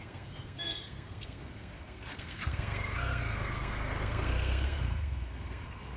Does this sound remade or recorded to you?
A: remade